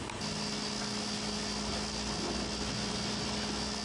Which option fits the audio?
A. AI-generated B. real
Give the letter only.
B